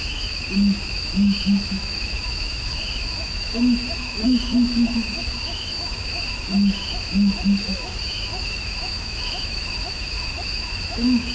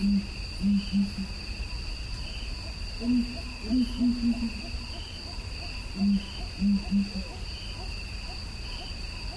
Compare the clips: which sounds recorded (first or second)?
second